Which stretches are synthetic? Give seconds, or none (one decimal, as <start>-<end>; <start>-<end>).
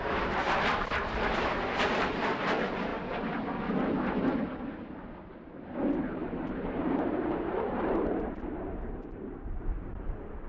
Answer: 0.0-2.9; 5.8-10.5